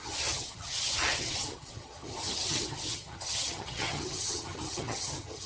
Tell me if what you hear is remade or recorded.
remade